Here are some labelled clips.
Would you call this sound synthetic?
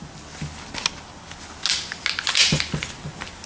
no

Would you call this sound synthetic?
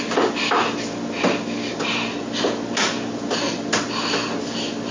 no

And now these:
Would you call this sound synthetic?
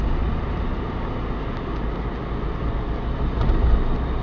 no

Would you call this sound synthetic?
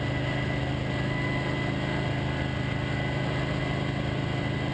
no